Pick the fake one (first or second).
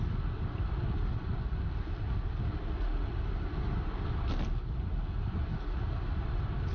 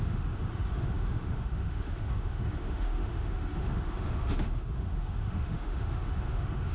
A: second